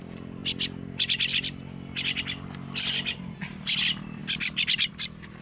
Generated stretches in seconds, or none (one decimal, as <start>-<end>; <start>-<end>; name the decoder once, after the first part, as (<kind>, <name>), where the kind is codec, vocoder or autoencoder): none